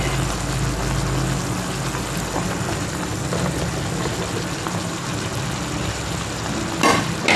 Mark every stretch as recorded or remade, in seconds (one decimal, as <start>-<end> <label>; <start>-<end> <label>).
0.0-7.4 recorded